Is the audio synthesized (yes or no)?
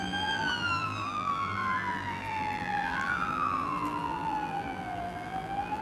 yes